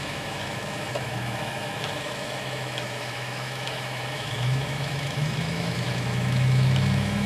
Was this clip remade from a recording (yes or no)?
yes